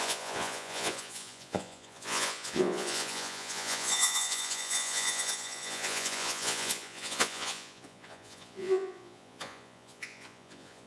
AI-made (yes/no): yes